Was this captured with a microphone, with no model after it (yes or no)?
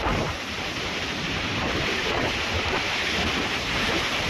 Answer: no